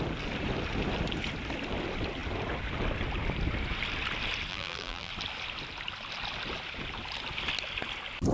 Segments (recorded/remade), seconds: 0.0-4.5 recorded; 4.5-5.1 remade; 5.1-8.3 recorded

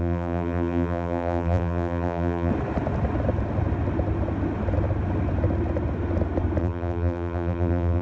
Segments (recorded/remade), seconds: 0.0-2.5 remade; 2.5-6.6 recorded; 6.6-8.0 remade

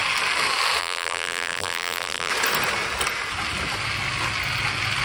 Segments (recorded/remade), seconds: 0.0-0.8 recorded; 0.8-2.3 remade; 2.3-5.0 recorded

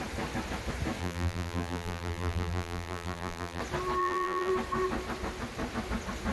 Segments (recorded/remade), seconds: 0.0-1.0 recorded; 1.0-3.6 remade; 3.6-4.0 recorded; 4.0-4.5 remade; 4.5-6.3 recorded

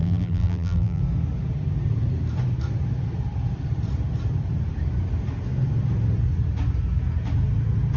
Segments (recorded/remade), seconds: 0.0-1.0 remade; 1.0-8.0 recorded

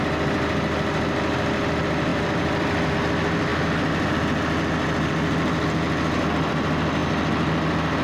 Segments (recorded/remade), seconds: 0.0-2.1 recorded; 2.1-2.9 remade; 2.9-8.0 recorded

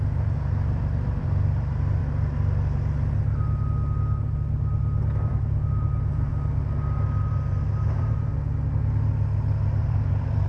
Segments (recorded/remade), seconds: 0.0-2.0 remade; 2.0-5.2 recorded; 5.2-6.3 remade; 6.3-7.3 recorded; 7.3-8.3 remade; 8.3-9.8 recorded; 9.8-10.5 remade

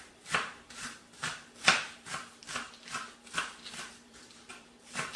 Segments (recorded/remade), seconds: 0.0-1.7 remade; 1.7-3.8 recorded; 3.8-5.2 remade